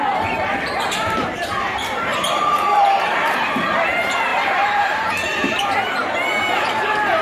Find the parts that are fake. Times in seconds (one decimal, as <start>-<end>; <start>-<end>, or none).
0.0-7.2